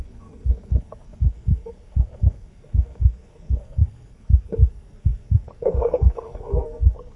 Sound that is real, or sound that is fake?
fake